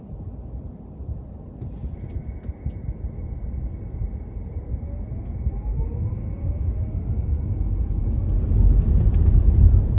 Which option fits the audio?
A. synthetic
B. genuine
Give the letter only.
A